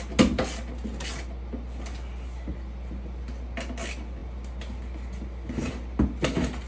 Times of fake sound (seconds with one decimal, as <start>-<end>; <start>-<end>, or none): none